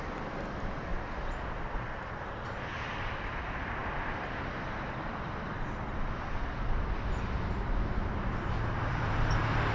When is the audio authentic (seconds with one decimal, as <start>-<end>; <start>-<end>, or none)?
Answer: none

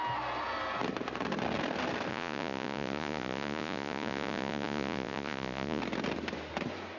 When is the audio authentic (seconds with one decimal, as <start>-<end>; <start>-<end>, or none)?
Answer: 0.0-2.1; 5.8-7.0

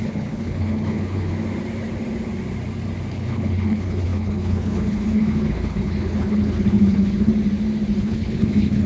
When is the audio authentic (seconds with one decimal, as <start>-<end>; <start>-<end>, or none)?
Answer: 1.3-3.1; 7.3-8.0